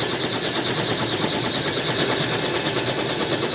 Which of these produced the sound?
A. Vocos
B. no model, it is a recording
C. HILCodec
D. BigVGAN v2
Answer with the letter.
B